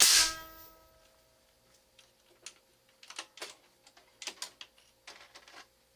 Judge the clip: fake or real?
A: real